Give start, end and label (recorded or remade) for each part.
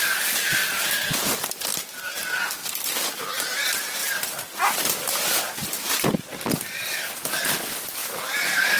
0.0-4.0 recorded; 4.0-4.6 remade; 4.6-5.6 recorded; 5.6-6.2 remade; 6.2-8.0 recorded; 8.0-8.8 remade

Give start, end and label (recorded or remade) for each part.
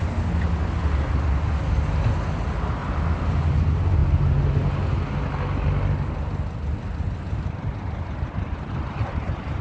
0.0-2.8 recorded; 2.8-3.3 remade; 3.3-9.6 recorded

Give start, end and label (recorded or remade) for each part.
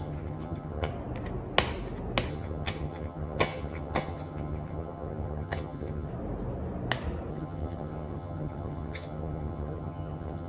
0.0-0.9 remade; 0.9-2.3 recorded; 2.3-6.1 remade; 6.1-7.3 recorded; 7.3-10.5 remade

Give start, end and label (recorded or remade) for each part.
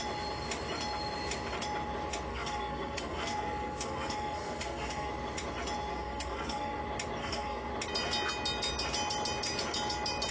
0.0-2.3 recorded; 2.3-5.1 remade; 5.1-5.9 recorded; 5.9-6.8 remade; 6.8-7.2 recorded; 7.2-7.7 remade; 7.7-10.3 recorded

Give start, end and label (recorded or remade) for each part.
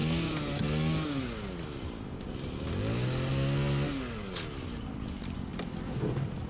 0.0-6.5 recorded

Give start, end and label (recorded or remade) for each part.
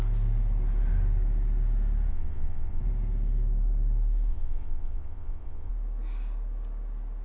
0.0-2.1 recorded; 2.1-2.8 remade; 2.8-4.3 recorded; 4.3-5.7 remade; 5.7-7.2 recorded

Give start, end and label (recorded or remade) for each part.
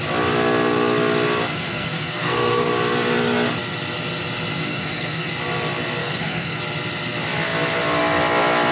0.0-1.5 recorded; 1.5-2.7 remade; 2.7-4.6 recorded; 4.6-5.3 remade; 5.3-6.0 recorded; 6.0-6.6 remade; 6.6-8.7 recorded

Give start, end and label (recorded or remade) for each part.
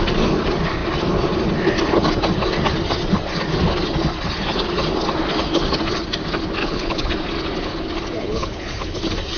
0.0-6.6 recorded; 6.6-7.1 remade; 7.1-8.2 recorded; 8.2-9.0 remade; 9.0-9.4 recorded